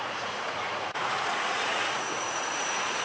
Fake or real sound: fake